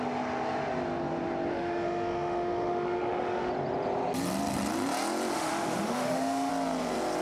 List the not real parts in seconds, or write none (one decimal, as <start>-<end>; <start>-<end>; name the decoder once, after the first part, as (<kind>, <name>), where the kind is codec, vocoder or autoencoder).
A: 1.5-3.5 (autoencoder, DAC-VAE); 5.3-6.5